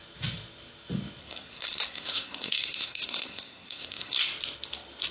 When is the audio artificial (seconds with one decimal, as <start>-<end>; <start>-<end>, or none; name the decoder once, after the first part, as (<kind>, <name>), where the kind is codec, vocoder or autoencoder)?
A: 1.2-4.3 (codec, SNAC)